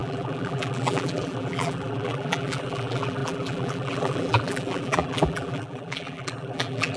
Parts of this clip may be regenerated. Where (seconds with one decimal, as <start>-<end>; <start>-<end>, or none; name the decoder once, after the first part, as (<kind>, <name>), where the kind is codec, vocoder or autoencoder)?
0.0-7.0 (vocoder, BigVGAN v2)